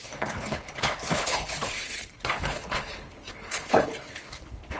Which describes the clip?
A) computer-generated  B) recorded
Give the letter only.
A